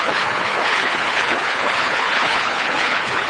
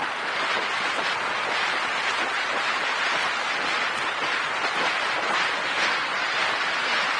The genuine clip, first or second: second